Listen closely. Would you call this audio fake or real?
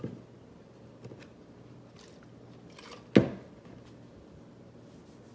real